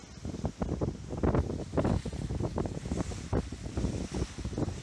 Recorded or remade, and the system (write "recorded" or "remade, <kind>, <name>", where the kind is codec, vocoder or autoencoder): recorded